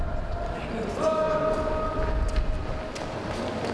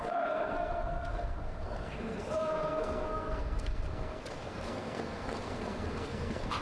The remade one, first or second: second